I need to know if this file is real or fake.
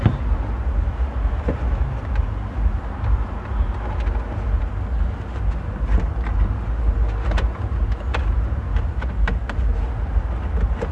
real